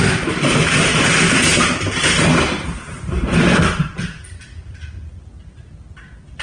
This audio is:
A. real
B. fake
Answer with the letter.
A